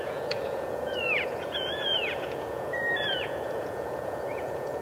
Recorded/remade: remade